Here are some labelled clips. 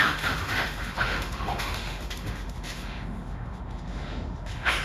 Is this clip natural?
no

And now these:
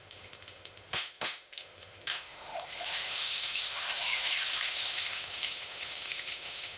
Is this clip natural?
no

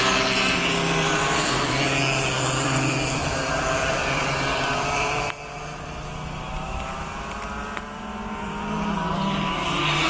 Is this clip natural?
yes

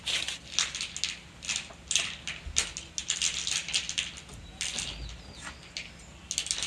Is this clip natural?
yes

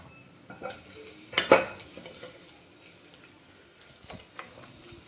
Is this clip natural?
yes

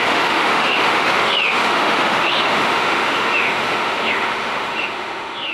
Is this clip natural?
no